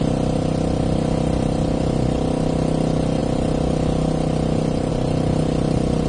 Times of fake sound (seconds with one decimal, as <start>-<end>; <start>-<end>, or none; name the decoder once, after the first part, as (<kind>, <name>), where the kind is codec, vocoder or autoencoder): none